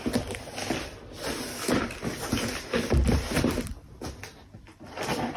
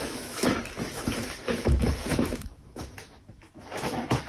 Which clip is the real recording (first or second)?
first